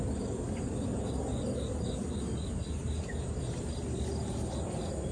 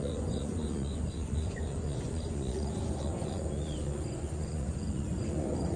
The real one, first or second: first